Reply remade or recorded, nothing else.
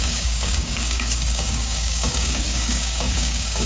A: remade